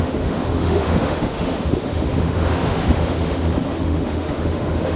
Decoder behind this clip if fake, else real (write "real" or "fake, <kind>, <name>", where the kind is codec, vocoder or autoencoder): fake, autoencoder, DAC-VAE